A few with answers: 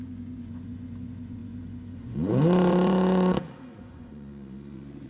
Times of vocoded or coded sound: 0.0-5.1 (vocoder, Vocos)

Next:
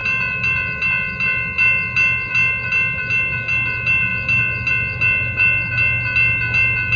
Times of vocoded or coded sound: none

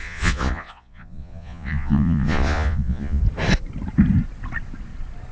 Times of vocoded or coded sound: 0.0-3.2 (vocoder, Vocos)

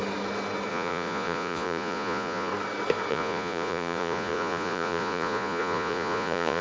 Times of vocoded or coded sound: 0.7-2.5 (vocoder, Vocos); 3.1-6.6